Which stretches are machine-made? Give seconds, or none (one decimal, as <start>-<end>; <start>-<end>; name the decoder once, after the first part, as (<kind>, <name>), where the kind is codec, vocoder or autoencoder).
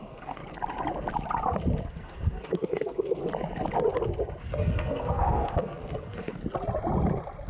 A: 0.0-0.4 (codec, SNAC); 1.9-3.2; 4.4-6.4